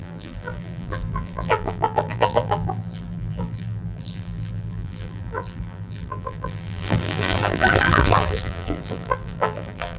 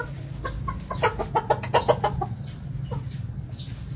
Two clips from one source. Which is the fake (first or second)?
first